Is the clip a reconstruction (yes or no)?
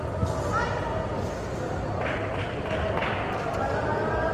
no